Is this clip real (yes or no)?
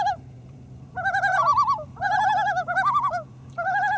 no